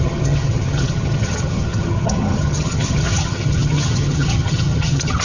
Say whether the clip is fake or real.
fake